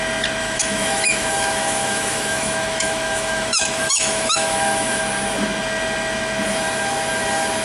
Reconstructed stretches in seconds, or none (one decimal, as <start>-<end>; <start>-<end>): 0.4-5.0